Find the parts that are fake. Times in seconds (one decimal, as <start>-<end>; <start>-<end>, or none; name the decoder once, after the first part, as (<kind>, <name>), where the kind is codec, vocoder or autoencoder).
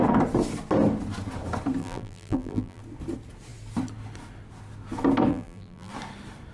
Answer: 1.8-2.8 (vocoder, BigVGAN v2); 5.3-5.9